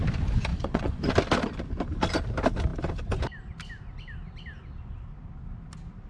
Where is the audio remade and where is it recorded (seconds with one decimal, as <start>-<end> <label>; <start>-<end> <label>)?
0.0-0.5 recorded; 0.5-1.1 remade; 1.1-6.1 recorded